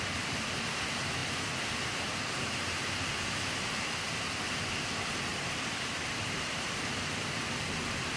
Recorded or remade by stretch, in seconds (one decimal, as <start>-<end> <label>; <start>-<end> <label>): 0.0-5.3 recorded; 5.3-7.3 remade; 7.3-8.2 recorded